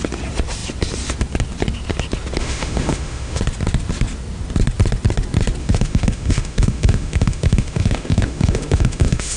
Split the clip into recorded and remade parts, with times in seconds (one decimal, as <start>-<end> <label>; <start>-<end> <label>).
0.0-2.4 recorded; 2.4-3.4 remade; 3.4-5.6 recorded; 5.6-9.4 remade